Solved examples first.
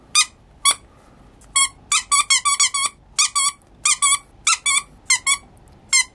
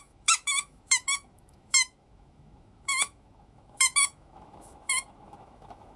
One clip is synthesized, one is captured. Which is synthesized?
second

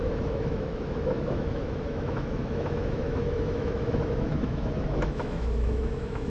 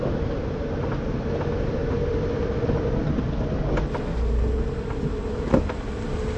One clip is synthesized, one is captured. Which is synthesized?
first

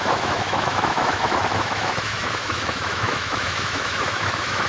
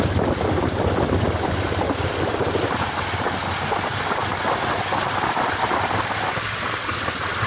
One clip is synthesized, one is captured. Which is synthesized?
first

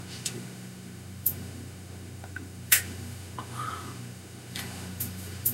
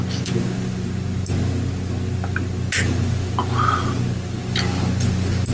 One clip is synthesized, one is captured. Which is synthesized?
first